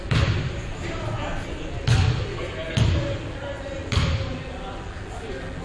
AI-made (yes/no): no